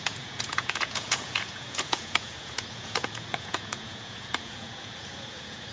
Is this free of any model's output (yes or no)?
no